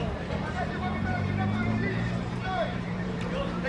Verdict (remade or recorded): remade